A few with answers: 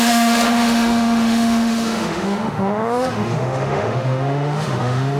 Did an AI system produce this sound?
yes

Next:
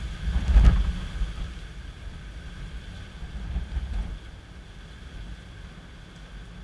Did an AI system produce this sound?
no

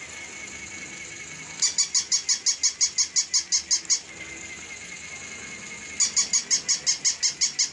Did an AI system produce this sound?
no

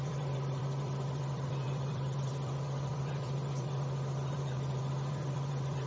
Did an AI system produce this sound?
yes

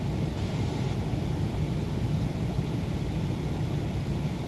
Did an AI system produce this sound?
no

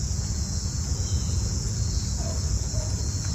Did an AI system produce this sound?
yes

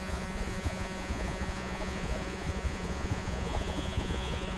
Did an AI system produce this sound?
yes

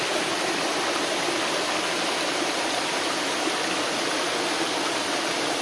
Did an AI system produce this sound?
no